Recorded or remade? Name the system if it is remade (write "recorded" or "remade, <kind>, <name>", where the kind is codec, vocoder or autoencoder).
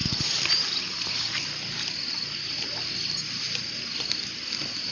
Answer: recorded